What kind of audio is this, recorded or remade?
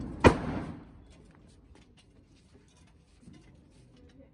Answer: recorded